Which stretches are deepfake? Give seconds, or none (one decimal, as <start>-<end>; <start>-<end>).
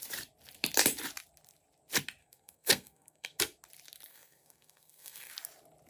2.2-3.4; 4.1-5.3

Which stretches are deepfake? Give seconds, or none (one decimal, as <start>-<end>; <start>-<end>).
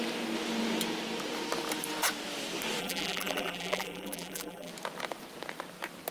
2.8-4.7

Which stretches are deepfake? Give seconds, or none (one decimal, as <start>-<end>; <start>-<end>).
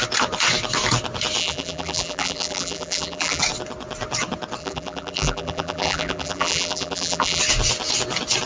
1.4-3.4; 4.6-7.4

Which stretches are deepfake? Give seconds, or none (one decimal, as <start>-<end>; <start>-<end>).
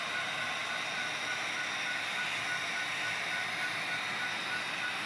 none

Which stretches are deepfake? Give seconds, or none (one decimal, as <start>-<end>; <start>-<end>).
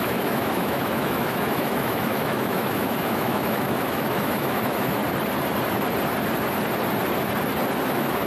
0.0-5.0; 7.9-8.3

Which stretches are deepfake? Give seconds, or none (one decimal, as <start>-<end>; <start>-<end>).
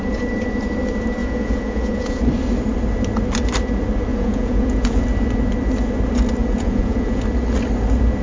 1.2-2.2; 4.1-5.0; 6.4-7.2